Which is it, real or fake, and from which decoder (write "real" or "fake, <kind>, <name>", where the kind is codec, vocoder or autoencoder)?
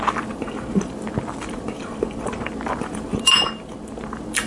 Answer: fake, vocoder, BigVGAN v2